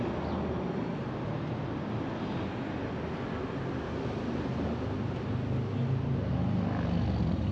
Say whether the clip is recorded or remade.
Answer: recorded